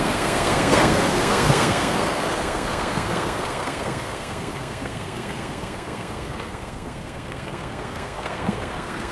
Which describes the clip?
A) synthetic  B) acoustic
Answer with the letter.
A